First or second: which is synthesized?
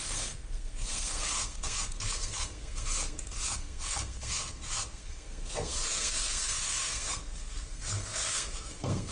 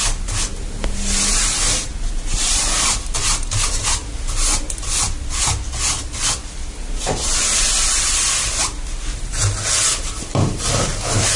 first